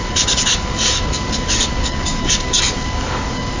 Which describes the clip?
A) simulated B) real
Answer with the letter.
A